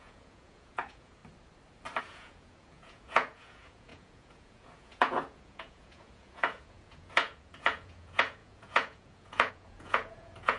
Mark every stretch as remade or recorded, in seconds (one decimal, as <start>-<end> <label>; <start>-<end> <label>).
0.0-1.2 remade; 1.2-2.0 recorded; 2.0-10.6 remade